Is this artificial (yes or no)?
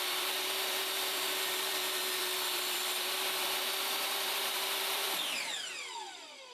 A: yes